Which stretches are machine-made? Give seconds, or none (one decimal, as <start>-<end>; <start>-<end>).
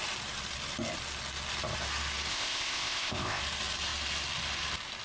2.3-3.4